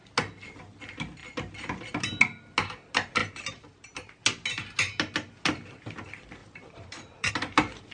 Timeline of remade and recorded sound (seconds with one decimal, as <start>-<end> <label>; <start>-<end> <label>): 0.0-3.2 recorded; 3.2-4.2 remade; 4.2-6.4 recorded; 6.4-7.3 remade; 7.3-7.9 recorded